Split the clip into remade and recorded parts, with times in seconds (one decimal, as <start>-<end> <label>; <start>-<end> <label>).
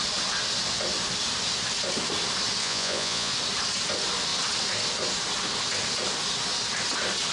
0.0-2.6 recorded; 2.6-3.3 remade; 3.3-7.3 recorded